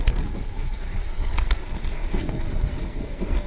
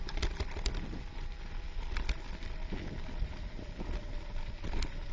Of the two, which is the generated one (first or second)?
first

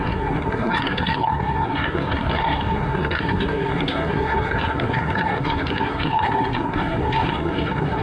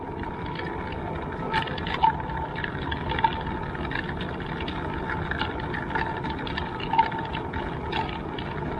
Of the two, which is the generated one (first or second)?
first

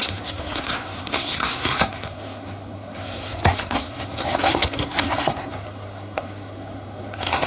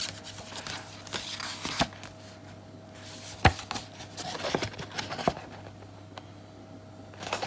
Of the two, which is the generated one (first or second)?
first